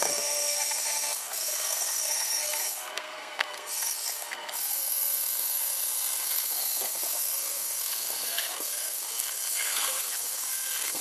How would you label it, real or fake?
fake